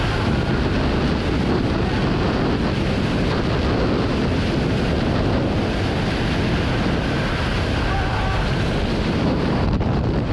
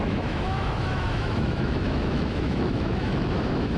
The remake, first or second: second